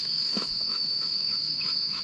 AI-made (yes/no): yes